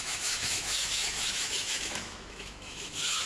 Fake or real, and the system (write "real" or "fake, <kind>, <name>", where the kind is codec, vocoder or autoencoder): fake, autoencoder, DAC-VAE